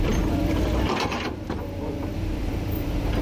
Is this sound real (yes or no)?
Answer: no